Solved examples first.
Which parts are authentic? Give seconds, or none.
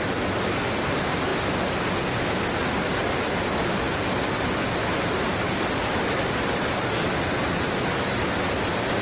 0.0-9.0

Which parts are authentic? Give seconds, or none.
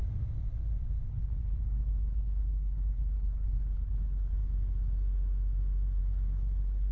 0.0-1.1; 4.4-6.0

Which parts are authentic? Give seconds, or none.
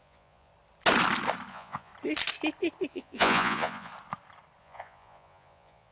0.5-1.5; 1.9-2.9; 3.9-4.6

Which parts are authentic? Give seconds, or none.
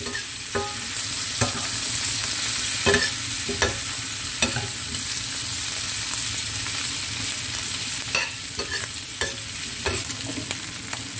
0.0-11.2